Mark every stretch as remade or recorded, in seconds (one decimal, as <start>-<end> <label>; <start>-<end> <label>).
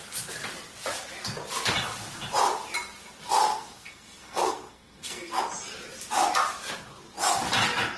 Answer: 0.0-3.5 recorded; 3.5-5.4 remade; 5.4-8.0 recorded